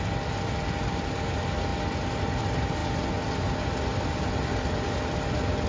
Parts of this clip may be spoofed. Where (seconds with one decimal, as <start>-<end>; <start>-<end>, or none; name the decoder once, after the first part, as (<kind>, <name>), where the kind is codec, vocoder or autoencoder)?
none